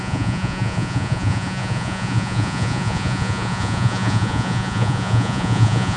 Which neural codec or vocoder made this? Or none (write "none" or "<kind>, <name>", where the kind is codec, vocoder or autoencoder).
vocoder, Vocos